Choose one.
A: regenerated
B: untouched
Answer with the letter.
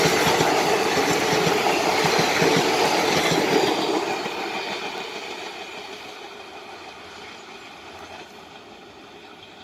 B